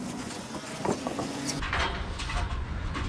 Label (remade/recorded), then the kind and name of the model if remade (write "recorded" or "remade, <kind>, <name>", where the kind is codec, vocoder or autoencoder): remade, vocoder, Vocos